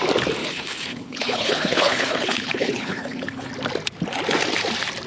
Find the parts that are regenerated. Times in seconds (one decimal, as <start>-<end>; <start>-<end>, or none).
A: 0.4-3.5